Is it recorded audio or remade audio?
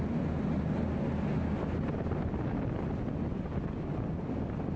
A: recorded